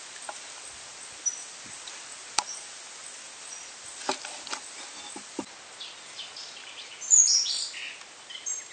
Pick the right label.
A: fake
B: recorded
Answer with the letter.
B